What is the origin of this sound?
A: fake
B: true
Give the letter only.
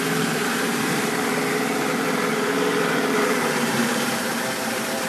A